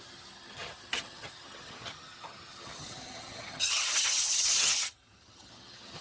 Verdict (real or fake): fake